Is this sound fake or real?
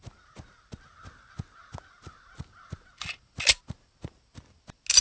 real